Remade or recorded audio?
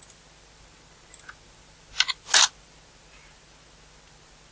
recorded